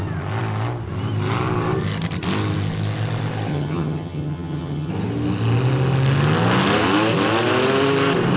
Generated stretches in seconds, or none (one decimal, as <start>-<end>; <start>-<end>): 3.5-4.9